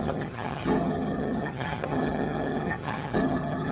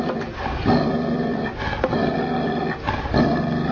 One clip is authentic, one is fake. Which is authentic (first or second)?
second